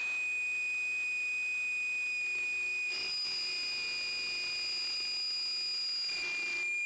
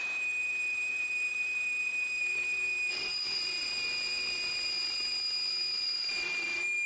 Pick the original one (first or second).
first